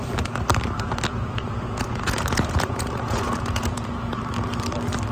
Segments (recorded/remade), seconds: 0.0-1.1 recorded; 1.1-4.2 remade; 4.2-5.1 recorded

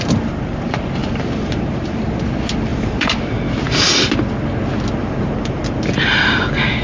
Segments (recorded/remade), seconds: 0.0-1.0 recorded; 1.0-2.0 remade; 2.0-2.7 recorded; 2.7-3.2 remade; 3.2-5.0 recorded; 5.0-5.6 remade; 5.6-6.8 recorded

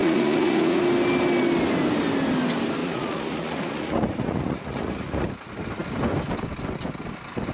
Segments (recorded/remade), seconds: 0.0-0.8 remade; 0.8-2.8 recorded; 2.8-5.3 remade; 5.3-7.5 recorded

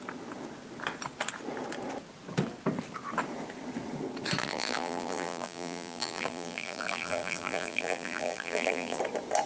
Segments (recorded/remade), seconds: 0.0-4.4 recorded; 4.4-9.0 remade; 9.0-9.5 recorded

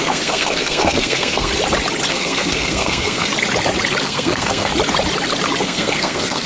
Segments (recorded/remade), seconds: 0.0-1.5 remade; 1.5-2.1 recorded; 2.1-3.3 remade; 3.3-4.0 recorded; 4.0-4.7 remade; 4.7-5.6 recorded; 5.6-6.5 remade